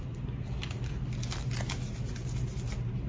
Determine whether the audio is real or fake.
real